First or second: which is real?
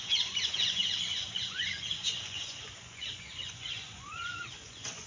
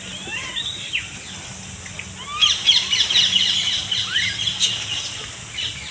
second